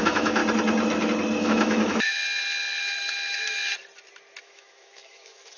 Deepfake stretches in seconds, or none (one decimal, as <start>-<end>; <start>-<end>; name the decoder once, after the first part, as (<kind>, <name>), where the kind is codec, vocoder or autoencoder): 0.0-0.4 (autoencoder, DAC-VAE); 1.4-2.2; 2.8-3.6; 4.4-5.6